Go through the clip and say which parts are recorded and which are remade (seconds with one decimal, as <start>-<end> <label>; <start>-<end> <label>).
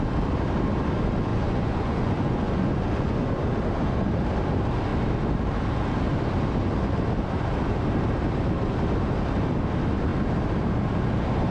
0.0-1.3 recorded; 1.3-3.3 remade; 3.3-11.5 recorded